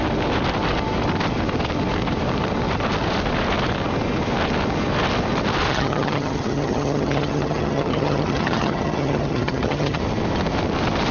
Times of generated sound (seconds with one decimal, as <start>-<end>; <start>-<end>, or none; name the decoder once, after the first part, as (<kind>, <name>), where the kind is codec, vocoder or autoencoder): 5.7-10.0 (vocoder, HiFi-GAN)